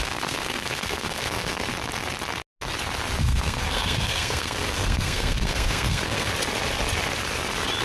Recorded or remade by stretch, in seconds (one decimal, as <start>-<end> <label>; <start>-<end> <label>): 0.0-1.7 remade; 1.7-3.2 recorded; 3.2-6.3 remade; 6.3-7.8 recorded